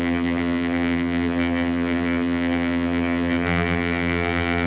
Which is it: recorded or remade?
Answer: remade